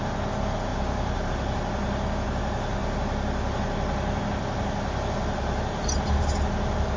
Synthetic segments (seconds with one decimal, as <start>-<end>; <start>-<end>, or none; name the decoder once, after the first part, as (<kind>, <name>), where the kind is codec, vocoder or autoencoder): 0.7-1.3 (vocoder, BigVGAN v2)

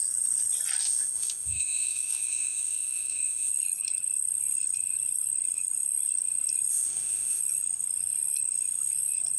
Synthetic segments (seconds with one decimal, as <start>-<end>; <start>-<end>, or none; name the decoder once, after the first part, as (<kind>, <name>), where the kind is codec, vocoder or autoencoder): 0.8-3.5 (autoencoder, DAC-VAE); 6.7-7.4

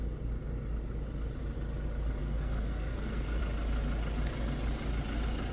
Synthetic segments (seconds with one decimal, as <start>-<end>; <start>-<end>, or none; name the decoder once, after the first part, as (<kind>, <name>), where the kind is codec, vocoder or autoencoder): 2.2-3.4 (codec, SNAC)

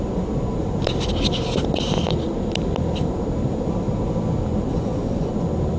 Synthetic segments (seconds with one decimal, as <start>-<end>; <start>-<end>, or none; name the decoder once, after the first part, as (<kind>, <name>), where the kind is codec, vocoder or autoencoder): 4.7-5.3 (vocoder, Vocos)

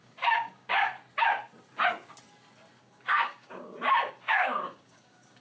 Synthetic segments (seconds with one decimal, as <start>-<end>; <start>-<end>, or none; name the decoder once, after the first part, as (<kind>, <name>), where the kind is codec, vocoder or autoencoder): 0.0-0.9 (codec, DAC); 2.8-5.4

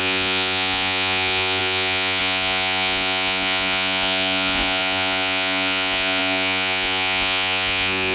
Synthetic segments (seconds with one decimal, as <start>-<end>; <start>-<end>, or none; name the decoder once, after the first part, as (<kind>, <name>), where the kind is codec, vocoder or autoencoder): 0.0-8.1 (vocoder, Vocos)

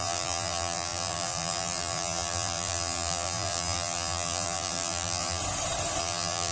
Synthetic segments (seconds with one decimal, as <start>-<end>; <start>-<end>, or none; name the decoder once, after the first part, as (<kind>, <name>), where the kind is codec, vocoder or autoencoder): 0.0-5.4 (vocoder, BigVGAN v2); 6.0-6.5